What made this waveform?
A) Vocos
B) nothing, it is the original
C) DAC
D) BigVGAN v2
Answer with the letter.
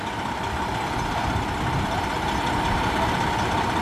B